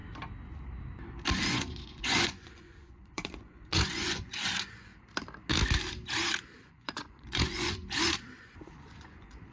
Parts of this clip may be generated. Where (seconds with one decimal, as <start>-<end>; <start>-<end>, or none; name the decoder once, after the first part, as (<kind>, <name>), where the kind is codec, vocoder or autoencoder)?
1.5-4.9 (vocoder, Vocos); 6.6-7.8; 8.4-9.5